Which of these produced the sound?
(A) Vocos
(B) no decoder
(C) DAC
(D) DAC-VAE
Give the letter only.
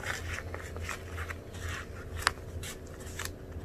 B